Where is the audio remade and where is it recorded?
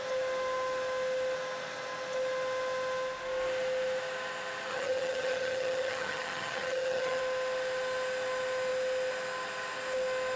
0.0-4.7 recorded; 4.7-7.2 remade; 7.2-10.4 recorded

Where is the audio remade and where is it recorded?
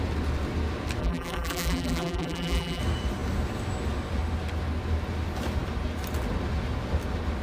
0.0-1.0 recorded; 1.0-2.8 remade; 2.8-7.4 recorded